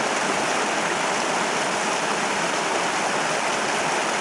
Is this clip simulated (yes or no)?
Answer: no